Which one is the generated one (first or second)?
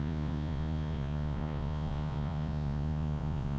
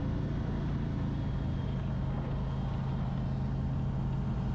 first